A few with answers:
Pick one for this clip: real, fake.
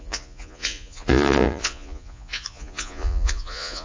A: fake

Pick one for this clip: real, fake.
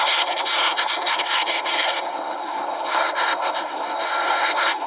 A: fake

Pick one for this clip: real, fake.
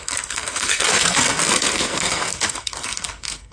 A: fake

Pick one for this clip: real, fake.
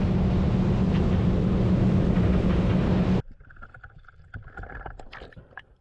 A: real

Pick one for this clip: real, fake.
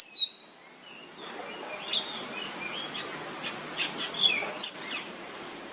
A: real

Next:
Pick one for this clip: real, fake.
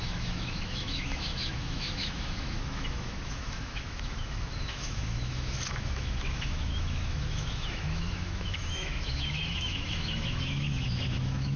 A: fake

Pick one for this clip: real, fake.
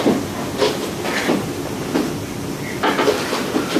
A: real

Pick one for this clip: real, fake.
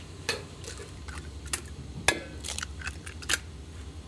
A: real